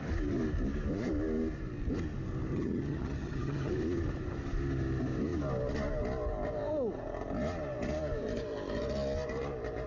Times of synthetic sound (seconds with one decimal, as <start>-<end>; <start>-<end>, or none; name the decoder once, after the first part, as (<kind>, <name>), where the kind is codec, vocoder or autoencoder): 2.5-3.7 (vocoder, HiFi-GAN)

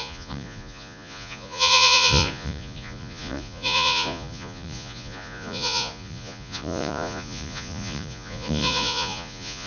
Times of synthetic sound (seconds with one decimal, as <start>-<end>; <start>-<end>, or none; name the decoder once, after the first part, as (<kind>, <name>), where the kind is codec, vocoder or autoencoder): 0.0-9.7 (vocoder, Vocos)

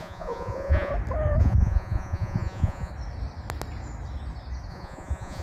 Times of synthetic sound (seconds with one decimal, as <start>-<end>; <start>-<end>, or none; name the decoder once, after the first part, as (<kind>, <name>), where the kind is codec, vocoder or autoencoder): 0.0-0.9 (vocoder, Vocos); 1.4-2.9; 4.7-5.4

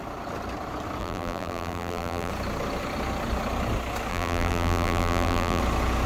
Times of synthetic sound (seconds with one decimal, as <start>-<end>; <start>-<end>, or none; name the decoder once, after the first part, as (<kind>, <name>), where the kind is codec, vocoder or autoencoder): 1.0-2.3 (vocoder, BigVGAN v2); 4.1-5.6

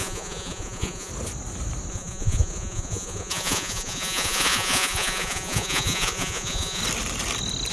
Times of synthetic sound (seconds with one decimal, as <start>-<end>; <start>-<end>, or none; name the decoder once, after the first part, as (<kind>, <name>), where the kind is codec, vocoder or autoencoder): 0.0-1.1 (vocoder, Vocos); 1.9-6.8